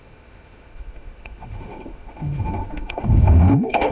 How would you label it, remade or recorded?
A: remade